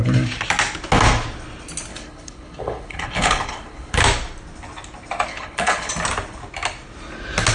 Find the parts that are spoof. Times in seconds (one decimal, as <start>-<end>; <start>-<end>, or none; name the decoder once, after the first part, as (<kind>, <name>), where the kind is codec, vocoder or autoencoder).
1.9-4.0 (codec, HILCodec); 5.3-5.9